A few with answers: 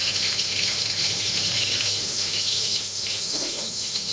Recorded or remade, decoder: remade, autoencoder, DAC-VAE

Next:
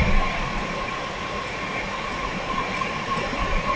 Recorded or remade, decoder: remade, vocoder, Vocos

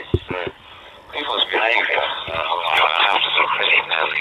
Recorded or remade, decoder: recorded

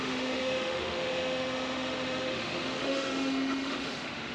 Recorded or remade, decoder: remade, autoencoder, DAC-VAE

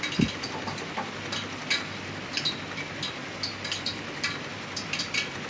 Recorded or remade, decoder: recorded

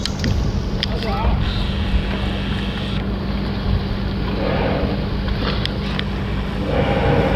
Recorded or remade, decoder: recorded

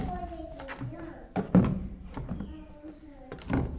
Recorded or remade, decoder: remade, vocoder, BigVGAN v2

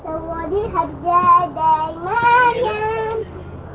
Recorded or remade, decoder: recorded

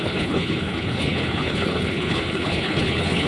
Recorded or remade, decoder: remade, codec, HILCodec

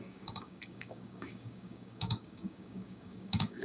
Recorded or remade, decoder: remade, codec, DAC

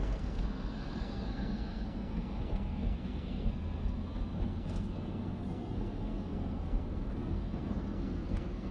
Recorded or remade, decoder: remade, codec, SNAC